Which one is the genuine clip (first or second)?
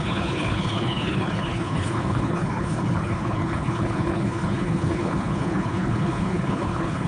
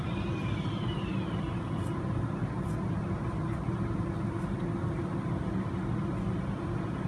second